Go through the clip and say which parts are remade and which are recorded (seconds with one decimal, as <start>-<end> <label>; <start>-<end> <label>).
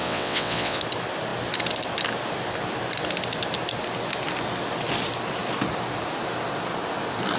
0.0-0.8 remade; 0.8-7.4 recorded